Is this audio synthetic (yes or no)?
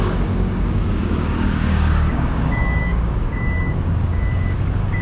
yes